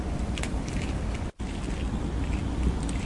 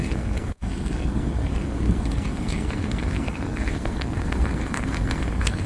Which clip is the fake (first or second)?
second